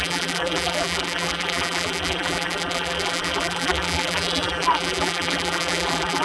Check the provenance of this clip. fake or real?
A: fake